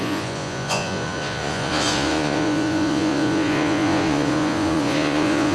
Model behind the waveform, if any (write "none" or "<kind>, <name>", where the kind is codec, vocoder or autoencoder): vocoder, Vocos